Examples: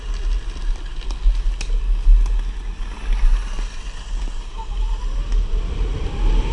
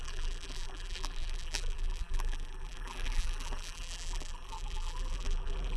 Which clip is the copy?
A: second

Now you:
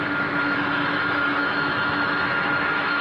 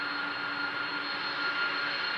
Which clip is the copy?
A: first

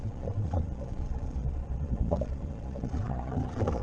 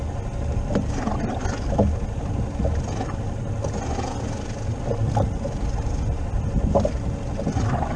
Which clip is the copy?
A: first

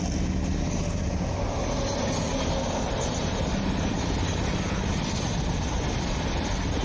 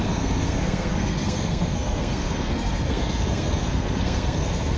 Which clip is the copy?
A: second